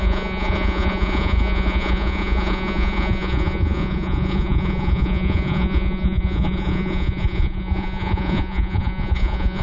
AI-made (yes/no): yes